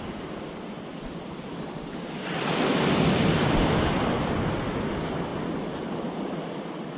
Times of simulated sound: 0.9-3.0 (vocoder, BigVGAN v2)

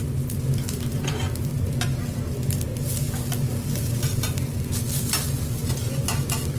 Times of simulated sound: 0.0-2.7 (vocoder, BigVGAN v2); 5.0-5.6